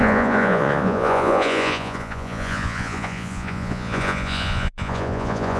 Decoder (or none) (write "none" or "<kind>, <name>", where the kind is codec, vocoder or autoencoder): vocoder, Vocos